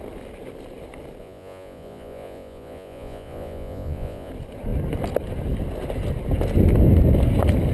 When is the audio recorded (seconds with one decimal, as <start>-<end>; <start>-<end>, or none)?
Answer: 0.0-1.2; 4.3-7.7